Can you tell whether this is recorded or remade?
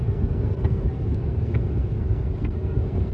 remade